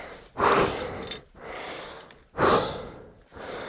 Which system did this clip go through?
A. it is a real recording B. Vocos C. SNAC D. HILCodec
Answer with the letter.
A